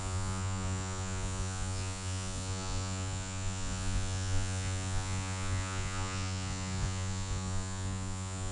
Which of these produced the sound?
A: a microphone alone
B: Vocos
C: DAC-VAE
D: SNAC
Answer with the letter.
B